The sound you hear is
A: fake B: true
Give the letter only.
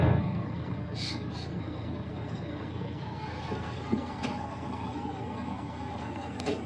A